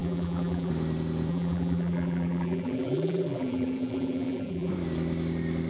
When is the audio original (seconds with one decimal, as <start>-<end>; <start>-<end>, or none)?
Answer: 0.7-1.3; 4.7-5.7